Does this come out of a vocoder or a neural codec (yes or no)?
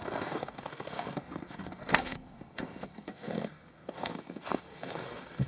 yes